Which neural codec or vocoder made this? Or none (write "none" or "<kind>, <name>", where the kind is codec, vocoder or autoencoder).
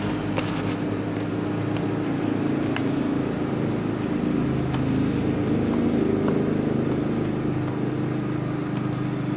none